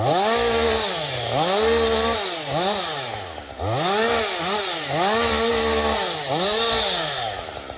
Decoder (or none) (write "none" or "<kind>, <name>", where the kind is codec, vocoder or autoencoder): none